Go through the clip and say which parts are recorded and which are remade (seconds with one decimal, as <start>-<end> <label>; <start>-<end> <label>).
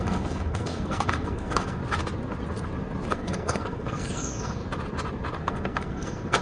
0.0-1.8 remade; 1.8-3.1 recorded; 3.1-4.6 remade; 4.6-5.4 recorded; 5.4-6.4 remade